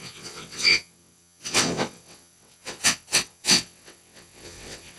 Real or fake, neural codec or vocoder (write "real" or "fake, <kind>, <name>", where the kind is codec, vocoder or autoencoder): fake, vocoder, WaveNeXt